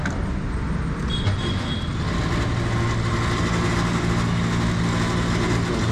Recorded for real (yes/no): yes